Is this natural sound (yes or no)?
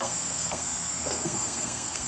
no